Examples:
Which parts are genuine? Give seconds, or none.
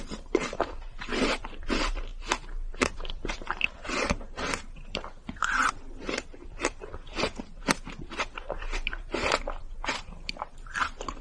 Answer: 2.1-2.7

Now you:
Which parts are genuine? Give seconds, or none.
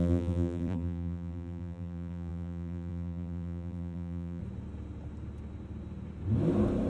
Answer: 4.4-6.9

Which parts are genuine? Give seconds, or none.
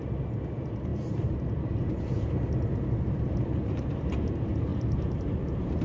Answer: 0.0-0.9; 4.3-4.7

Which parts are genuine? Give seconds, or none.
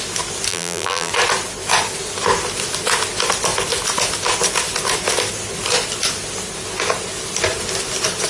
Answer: 0.0-0.5; 1.1-8.3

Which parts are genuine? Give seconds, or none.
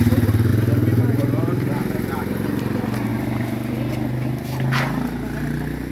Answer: 0.5-1.0; 3.1-5.9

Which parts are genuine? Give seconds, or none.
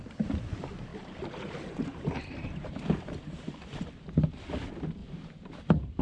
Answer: 0.0-0.9; 3.2-5.0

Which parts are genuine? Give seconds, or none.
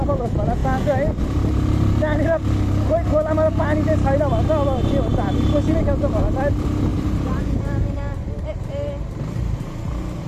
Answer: 0.0-5.1; 5.8-6.9; 8.9-10.3